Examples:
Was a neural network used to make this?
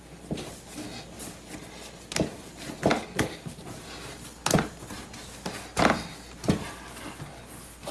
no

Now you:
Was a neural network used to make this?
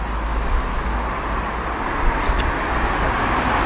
no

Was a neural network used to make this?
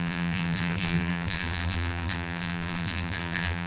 yes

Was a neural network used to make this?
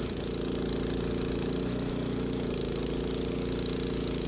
no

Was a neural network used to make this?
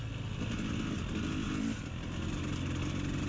no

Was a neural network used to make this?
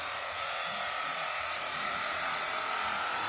yes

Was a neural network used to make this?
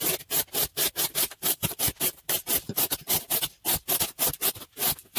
no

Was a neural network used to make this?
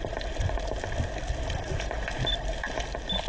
no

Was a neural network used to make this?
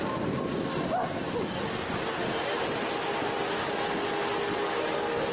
no